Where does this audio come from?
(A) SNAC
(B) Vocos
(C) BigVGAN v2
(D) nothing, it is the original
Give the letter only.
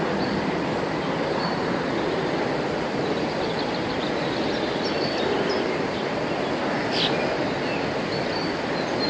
D